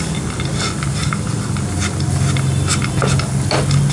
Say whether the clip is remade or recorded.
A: recorded